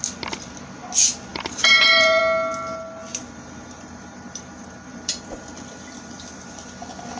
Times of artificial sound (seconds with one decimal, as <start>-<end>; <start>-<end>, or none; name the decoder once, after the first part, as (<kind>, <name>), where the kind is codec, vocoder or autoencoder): 1.3-2.2 (vocoder, BigVGAN v2); 3.1-6.7